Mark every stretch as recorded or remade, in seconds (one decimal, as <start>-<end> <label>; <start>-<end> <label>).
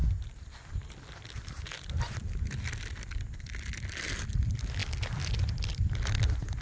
0.0-6.6 recorded